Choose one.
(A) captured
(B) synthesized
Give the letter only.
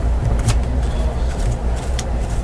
B